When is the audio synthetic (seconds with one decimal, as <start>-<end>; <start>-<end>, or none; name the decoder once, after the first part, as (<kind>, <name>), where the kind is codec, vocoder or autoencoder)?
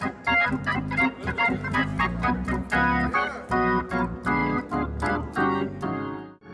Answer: none